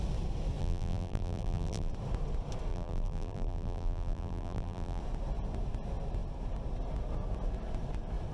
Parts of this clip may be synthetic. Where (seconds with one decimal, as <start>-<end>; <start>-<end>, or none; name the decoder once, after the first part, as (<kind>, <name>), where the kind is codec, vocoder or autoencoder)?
0.6-1.9 (vocoder, BigVGAN v2); 2.7-5.0